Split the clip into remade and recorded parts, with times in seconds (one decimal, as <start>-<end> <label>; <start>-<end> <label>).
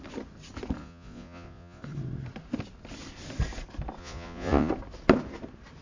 0.0-0.8 recorded; 0.8-1.8 remade; 1.8-4.0 recorded; 4.0-4.7 remade; 4.7-5.8 recorded